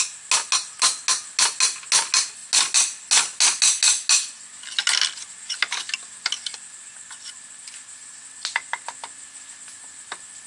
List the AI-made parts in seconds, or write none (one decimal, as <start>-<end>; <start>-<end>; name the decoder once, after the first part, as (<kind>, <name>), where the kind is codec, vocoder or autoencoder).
none